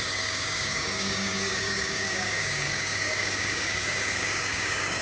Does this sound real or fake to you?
fake